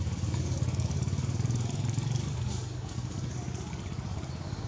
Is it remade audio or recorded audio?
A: remade